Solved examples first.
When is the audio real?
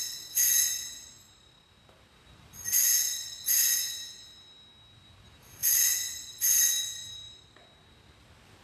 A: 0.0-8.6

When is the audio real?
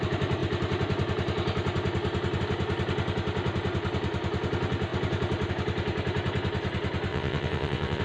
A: 0.0-7.1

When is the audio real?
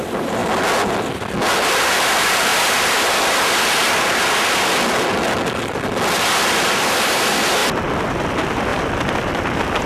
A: 0.4-1.9; 2.5-6.4; 7.6-8.2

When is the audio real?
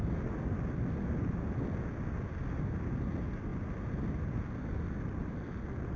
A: 0.0-6.0